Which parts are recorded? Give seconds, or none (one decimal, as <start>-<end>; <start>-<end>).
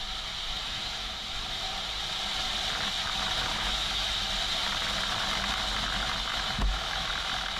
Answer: 0.0-0.6; 1.1-3.5; 4.1-6.3; 7.1-7.6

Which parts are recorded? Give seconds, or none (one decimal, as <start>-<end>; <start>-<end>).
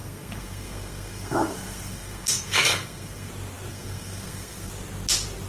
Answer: 3.3-3.7; 4.7-5.5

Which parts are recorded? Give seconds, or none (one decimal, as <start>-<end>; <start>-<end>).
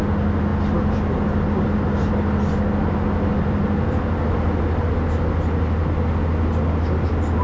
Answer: 0.0-7.4